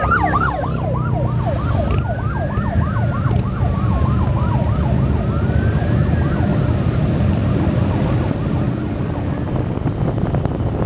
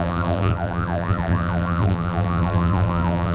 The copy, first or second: second